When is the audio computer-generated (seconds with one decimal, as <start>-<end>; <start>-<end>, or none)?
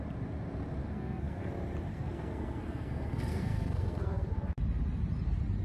0.8-1.5; 1.9-4.3